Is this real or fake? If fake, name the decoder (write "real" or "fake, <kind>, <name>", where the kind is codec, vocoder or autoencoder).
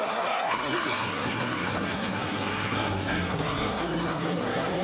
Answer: fake, codec, SNAC